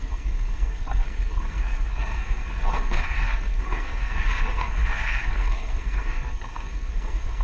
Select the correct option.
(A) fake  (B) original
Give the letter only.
A